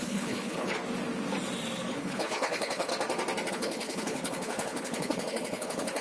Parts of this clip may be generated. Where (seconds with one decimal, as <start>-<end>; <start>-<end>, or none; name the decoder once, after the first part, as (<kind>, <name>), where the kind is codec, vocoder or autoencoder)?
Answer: 0.0-0.7 (codec, HILCodec); 1.9-2.9; 3.5-6.0